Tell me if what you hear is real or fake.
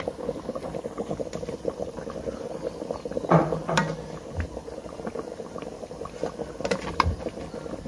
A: real